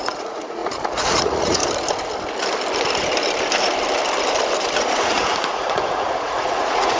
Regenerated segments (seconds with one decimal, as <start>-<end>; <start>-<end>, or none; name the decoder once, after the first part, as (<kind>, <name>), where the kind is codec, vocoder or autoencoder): 0.0-1.6 (vocoder, Vocos); 5.0-7.0